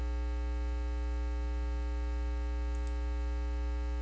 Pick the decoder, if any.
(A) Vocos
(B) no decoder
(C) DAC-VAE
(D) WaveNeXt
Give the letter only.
B